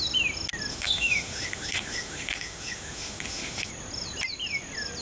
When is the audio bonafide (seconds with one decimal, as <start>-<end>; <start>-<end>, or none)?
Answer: 0.0-0.7; 3.7-5.0